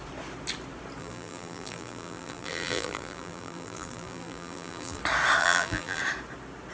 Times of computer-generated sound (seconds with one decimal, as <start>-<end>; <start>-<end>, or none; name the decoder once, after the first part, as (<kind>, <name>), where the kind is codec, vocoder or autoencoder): 1.0-5.0 (vocoder, BigVGAN v2); 5.4-6.0